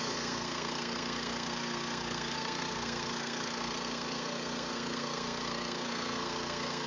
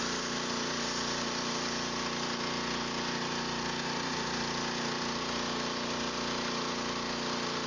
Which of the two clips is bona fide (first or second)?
second